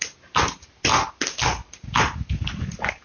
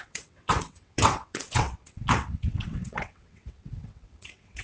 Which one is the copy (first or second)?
second